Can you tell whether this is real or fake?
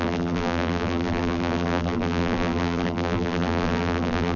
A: fake